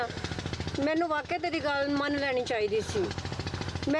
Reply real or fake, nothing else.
real